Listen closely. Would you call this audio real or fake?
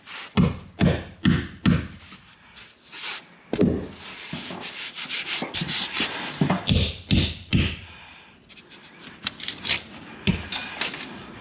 real